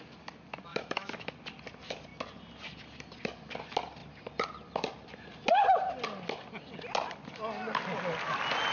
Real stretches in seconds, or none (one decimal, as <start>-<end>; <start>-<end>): 0.0-0.7; 1.3-8.7